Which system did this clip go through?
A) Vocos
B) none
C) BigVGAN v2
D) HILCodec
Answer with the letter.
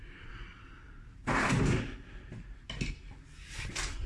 B